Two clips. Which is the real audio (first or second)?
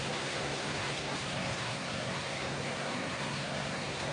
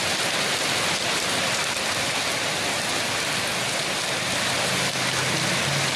second